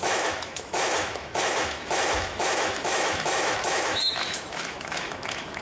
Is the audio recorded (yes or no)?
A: no